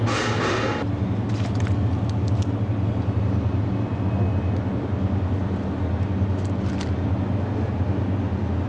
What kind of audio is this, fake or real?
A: real